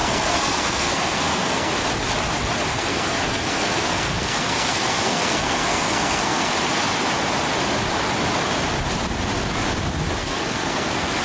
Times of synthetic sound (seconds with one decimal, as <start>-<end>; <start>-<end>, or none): 0.0-1.7; 2.7-6.5; 10.2-11.2